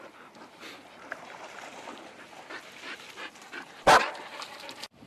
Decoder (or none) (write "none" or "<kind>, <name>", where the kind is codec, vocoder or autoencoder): none